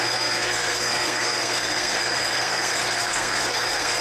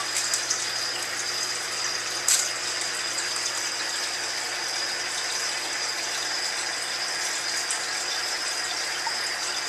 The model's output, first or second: first